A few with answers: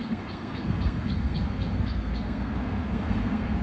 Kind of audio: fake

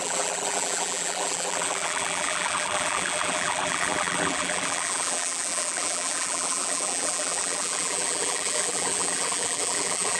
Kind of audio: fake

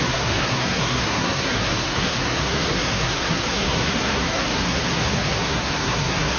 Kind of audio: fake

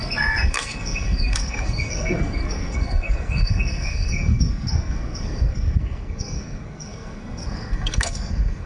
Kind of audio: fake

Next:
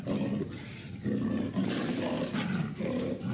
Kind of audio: real